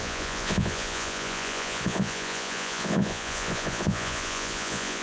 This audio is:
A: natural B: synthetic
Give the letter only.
B